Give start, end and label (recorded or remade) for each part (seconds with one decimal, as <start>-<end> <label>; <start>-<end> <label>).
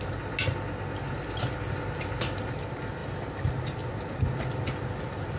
0.0-5.4 recorded